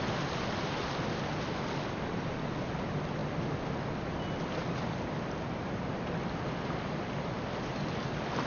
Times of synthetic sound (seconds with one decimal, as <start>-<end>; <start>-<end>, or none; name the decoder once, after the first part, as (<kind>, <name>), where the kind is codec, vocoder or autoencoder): none